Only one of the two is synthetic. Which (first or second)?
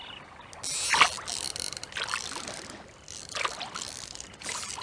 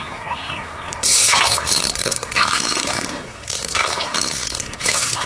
second